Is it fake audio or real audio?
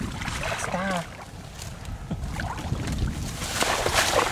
real